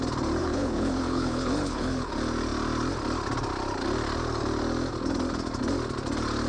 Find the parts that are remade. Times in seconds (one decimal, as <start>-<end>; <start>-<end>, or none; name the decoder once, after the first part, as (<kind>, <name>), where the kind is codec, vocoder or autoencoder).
0.4-2.1 (codec, HILCodec)